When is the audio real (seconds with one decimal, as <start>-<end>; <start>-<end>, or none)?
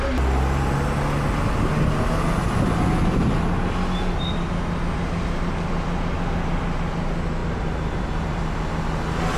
0.0-7.4; 8.4-9.4